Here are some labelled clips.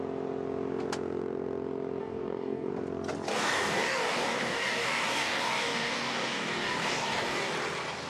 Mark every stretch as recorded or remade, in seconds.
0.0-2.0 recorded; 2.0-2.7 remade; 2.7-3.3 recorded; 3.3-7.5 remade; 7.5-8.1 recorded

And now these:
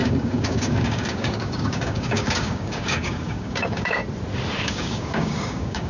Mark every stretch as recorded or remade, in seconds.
0.0-4.0 remade; 4.0-4.6 recorded; 4.6-5.9 remade

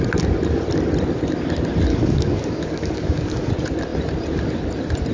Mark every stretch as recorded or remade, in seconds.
0.0-1.9 recorded; 1.9-3.5 remade; 3.5-5.1 recorded

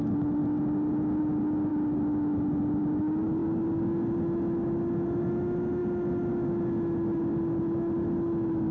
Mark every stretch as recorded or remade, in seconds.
0.0-8.7 recorded